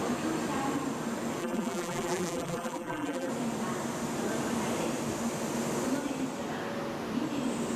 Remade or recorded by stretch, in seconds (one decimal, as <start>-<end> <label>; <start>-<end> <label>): 0.0-1.4 recorded; 1.4-3.3 remade; 3.3-7.8 recorded